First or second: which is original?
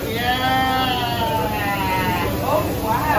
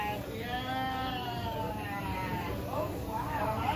first